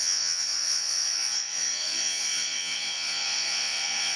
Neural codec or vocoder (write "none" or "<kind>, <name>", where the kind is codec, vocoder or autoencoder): vocoder, Vocos